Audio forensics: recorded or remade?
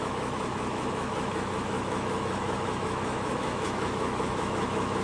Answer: remade